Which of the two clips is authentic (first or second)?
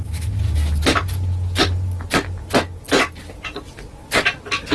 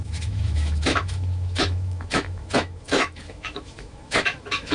first